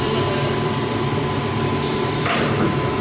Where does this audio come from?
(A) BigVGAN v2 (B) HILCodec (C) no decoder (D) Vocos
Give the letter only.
A